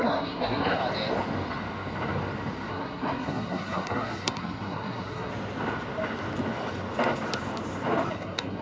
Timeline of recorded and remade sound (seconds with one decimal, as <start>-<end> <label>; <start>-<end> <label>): 0.0-0.8 remade; 0.8-2.7 recorded; 2.7-5.3 remade; 5.3-8.1 recorded; 8.1-8.6 remade

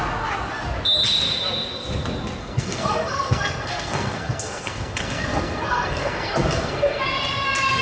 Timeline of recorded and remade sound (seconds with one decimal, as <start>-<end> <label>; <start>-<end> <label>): 0.0-2.4 recorded; 2.4-7.0 remade; 7.0-7.8 recorded

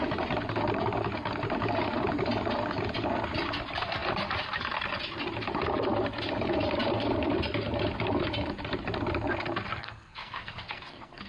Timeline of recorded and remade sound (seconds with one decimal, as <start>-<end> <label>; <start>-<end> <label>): 0.0-9.8 recorded; 9.8-11.3 remade

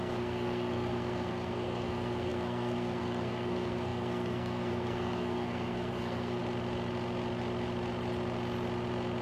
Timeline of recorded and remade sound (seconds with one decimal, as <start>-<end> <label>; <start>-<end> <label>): 0.0-6.4 remade; 6.4-9.2 recorded